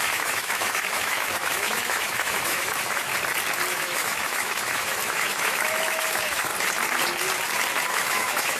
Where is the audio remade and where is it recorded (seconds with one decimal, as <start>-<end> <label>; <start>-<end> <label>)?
0.0-3.1 remade; 3.1-3.7 recorded; 3.7-6.5 remade; 6.5-7.9 recorded; 7.9-8.6 remade